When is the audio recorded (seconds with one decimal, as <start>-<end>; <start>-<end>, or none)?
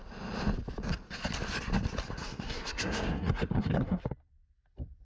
0.0-2.2; 4.0-5.0